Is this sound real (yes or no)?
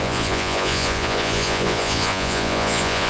no